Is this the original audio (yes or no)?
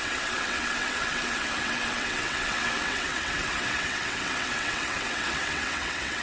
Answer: no